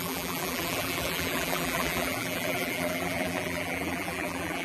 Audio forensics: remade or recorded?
remade